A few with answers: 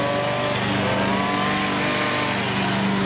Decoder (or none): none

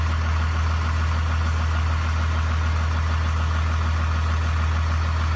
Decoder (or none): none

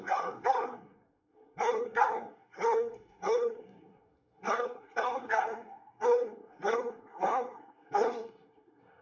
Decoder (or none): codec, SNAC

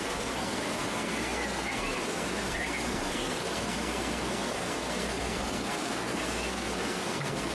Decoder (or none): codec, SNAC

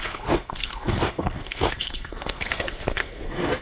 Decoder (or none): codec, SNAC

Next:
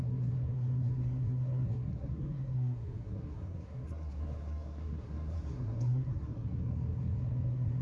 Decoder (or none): codec, SNAC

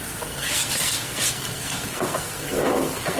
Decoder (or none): codec, SNAC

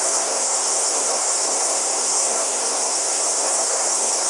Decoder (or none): codec, SNAC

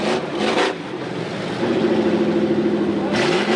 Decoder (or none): none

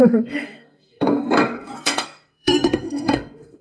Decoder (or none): codec, SNAC